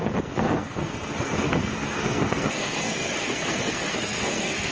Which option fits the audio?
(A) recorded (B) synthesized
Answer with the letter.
B